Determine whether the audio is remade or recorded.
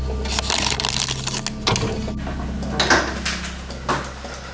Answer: recorded